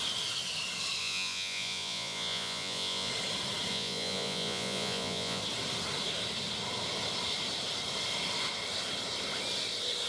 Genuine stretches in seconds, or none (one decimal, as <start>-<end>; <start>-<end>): 0.0-1.0; 3.1-3.7; 5.4-10.1